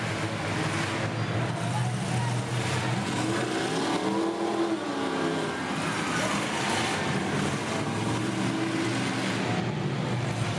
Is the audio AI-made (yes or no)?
no